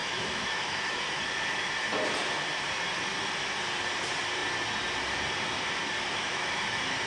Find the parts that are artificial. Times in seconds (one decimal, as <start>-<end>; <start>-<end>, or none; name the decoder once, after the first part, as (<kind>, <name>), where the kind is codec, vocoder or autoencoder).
0.0-1.7 (autoencoder, DAC-VAE); 6.1-7.1